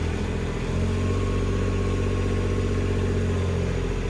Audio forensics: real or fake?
real